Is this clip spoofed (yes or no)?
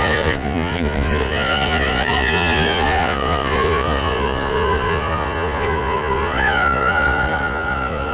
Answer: yes